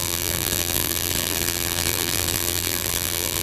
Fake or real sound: fake